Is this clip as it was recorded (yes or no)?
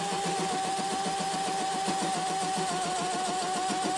yes